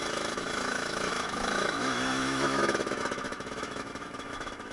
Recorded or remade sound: remade